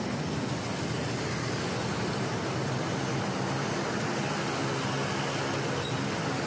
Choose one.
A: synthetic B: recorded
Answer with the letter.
B